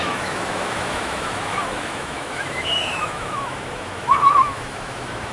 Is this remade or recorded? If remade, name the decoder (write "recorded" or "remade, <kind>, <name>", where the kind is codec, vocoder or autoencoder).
remade, autoencoder, DAC-VAE